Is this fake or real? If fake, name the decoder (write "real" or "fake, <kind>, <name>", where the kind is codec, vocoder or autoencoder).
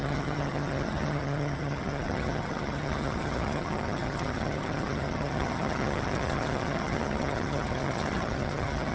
fake, vocoder, HiFi-GAN